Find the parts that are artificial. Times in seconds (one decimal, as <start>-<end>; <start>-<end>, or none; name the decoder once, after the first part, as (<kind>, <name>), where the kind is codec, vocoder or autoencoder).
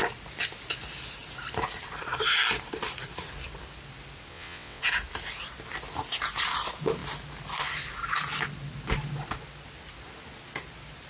4.3-4.8 (vocoder, WaveNeXt)